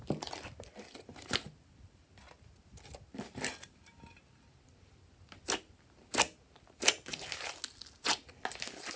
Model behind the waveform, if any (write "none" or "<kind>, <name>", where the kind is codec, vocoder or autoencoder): none